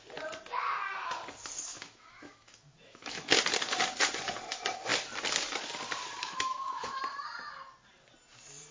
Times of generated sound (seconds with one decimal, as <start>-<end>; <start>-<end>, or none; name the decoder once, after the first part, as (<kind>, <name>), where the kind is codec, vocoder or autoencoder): 1.7-3.4 (autoencoder, DAC-VAE); 6.2-7.0